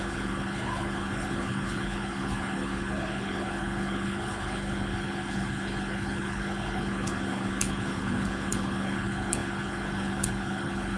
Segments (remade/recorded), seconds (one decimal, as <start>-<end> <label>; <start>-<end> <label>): 0.0-11.0 remade